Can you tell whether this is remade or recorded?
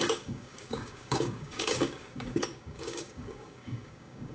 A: remade